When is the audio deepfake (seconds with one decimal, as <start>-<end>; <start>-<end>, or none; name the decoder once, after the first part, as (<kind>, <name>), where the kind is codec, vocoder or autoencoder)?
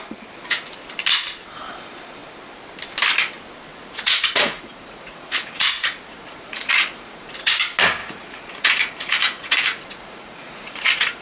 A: 3.7-7.5 (vocoder, Vocos); 8.0-11.2